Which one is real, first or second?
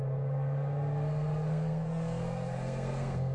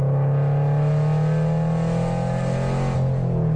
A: second